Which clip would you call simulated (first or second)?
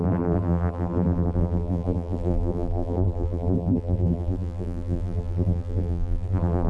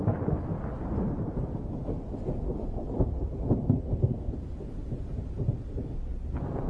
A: first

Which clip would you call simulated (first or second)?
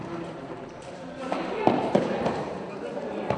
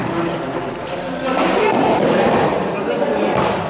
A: first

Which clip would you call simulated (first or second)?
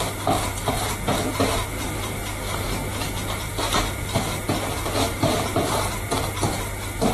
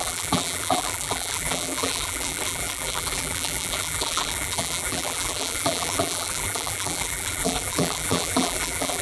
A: second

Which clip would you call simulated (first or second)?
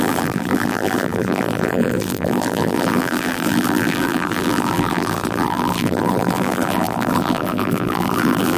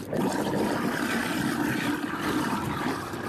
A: first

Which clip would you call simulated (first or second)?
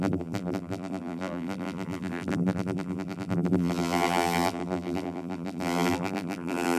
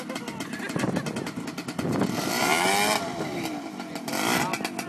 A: first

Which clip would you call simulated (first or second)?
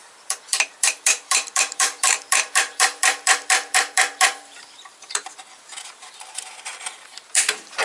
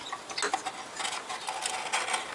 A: first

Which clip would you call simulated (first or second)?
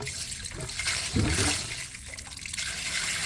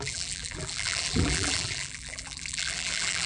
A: second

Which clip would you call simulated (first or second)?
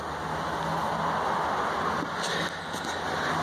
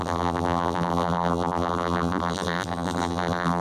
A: second